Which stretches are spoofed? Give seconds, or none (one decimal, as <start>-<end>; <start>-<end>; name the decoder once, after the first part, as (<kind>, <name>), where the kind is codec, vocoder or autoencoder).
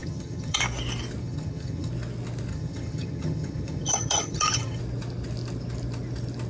0.0-0.6 (vocoder, HiFi-GAN); 1.2-1.9; 2.5-4.8